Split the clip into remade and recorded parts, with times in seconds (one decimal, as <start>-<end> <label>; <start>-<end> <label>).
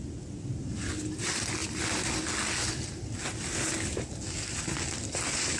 0.0-5.6 recorded